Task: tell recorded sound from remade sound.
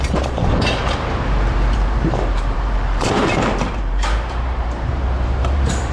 remade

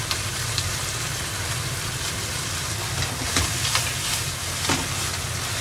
remade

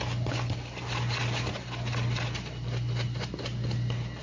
recorded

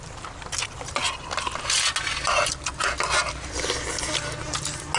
recorded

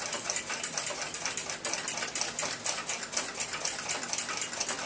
recorded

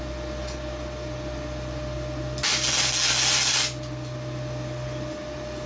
recorded